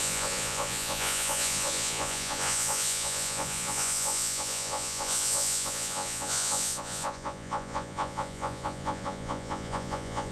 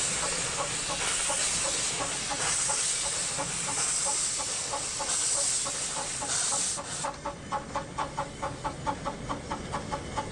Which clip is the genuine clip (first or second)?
second